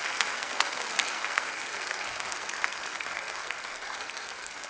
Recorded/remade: remade